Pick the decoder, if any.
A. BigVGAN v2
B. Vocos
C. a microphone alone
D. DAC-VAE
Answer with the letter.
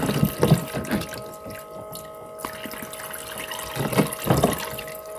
C